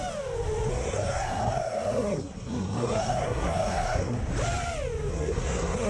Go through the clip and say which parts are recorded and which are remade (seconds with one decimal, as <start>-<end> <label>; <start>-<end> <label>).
0.0-0.7 recorded; 0.7-4.2 remade; 4.2-5.1 recorded; 5.1-5.9 remade